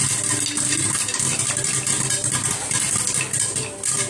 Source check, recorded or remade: recorded